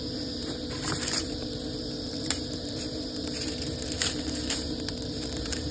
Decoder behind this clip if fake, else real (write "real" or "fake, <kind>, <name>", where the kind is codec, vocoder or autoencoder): fake, vocoder, BigVGAN v2